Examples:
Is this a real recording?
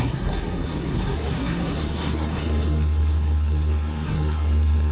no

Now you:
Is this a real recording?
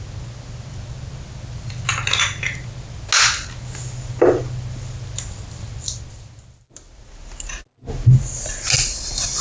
yes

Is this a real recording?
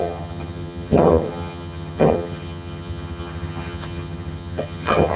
no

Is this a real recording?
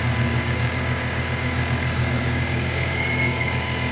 no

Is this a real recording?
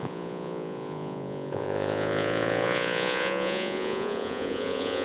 no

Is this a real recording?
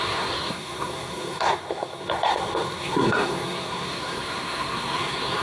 no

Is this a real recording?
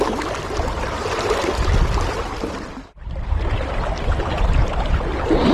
yes